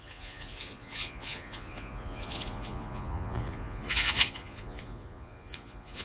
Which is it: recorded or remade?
remade